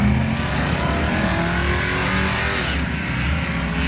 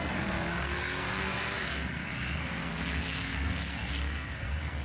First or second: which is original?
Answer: first